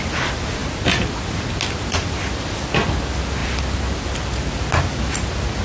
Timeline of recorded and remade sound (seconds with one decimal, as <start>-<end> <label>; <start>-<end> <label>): 0.0-5.6 recorded